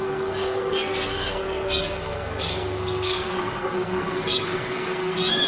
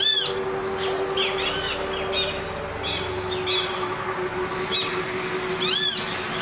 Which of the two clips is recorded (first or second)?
second